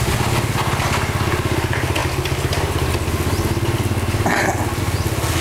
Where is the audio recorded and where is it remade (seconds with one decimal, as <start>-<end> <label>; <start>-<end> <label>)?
0.0-5.4 recorded